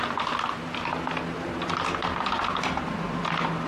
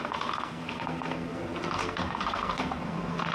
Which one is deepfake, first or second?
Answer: second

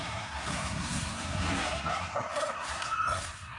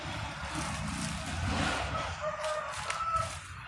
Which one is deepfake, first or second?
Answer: first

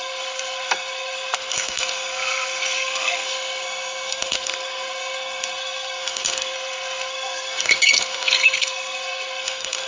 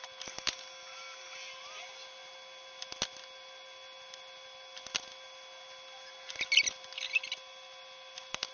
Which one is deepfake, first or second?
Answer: first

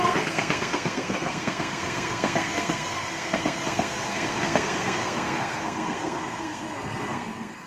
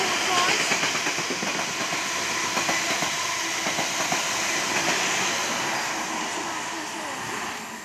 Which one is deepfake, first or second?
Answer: first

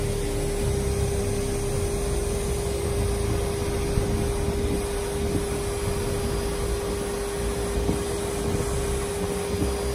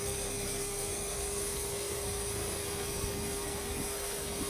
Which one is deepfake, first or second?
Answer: second